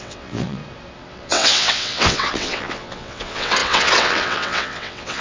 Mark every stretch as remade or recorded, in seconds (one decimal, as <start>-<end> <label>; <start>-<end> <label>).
0.0-0.6 remade; 0.6-1.1 recorded; 1.1-5.2 remade